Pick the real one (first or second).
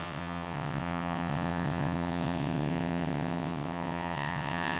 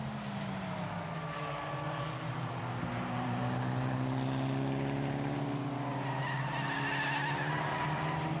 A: second